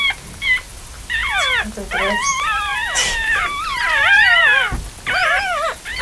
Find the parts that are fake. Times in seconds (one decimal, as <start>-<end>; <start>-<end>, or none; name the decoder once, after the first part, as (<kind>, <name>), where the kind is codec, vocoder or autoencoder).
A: 2.7-4.4 (vocoder, BigVGAN v2); 5.2-6.0